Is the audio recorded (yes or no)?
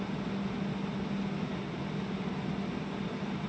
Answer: yes